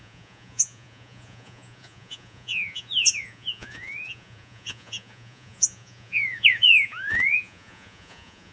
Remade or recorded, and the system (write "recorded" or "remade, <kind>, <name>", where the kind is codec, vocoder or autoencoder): remade, vocoder, Vocos